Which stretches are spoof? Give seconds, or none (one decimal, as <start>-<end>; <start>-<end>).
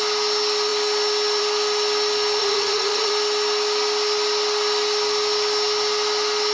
2.4-3.1